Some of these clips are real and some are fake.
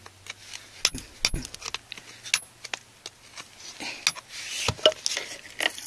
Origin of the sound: real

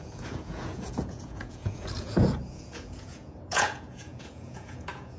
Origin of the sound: fake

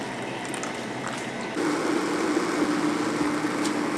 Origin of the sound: real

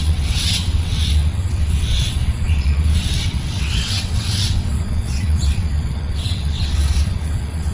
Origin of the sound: fake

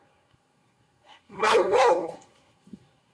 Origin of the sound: fake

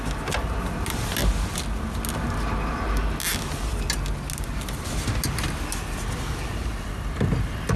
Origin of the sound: real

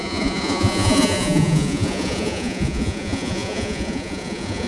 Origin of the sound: fake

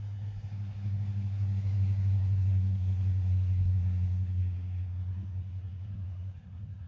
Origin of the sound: fake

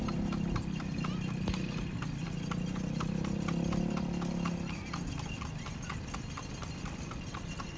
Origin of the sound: real